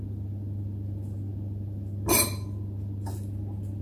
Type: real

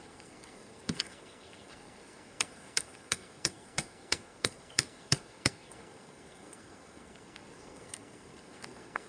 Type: fake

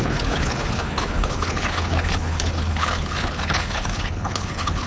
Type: fake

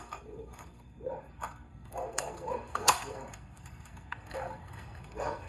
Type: fake